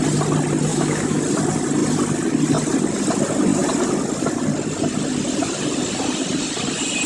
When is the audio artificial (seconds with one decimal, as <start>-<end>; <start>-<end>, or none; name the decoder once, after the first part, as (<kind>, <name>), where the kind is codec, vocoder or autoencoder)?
0.7-1.2 (autoencoder, DAC-VAE)